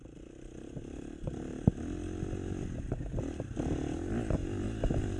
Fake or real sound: real